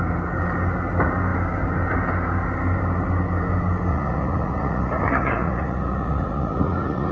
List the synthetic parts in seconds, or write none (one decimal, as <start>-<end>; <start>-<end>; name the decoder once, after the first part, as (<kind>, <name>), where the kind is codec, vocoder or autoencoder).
3.9-7.1 (vocoder, Vocos)